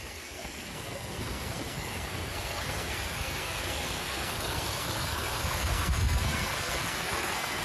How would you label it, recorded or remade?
remade